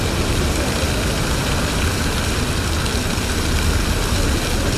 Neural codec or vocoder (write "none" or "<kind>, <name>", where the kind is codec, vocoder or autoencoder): none